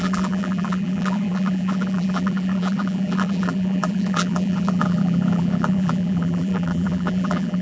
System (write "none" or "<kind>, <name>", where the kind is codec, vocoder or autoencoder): vocoder, BigVGAN v2